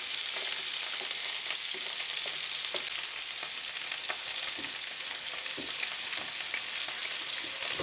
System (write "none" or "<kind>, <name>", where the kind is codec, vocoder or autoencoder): none